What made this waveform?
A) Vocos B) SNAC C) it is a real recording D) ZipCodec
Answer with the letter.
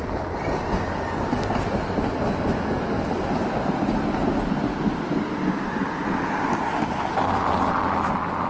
C